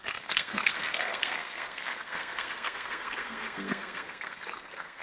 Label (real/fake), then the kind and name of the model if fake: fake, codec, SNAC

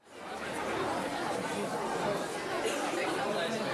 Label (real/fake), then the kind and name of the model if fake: real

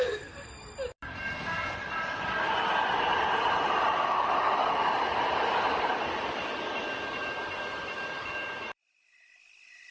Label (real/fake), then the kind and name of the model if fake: fake, vocoder, BigVGAN v2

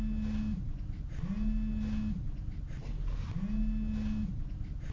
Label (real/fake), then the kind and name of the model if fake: real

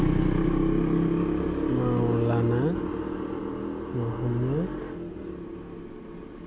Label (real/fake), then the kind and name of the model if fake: real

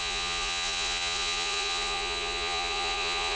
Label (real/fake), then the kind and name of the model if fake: fake, vocoder, Vocos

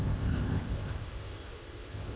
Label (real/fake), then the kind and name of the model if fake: fake, codec, ZipCodec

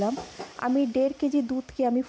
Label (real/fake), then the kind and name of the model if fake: real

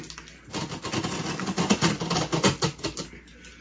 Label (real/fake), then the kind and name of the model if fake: real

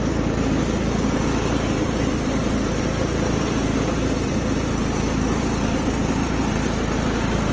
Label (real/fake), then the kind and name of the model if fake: fake, vocoder, BigVGAN v2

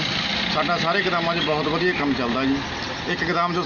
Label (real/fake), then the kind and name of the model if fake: real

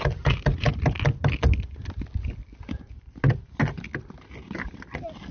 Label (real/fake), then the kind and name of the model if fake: real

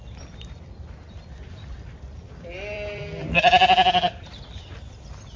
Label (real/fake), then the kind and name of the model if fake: fake, vocoder, BigVGAN v2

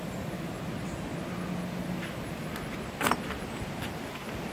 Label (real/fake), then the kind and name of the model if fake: real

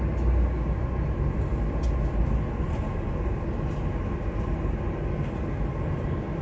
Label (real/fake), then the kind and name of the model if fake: real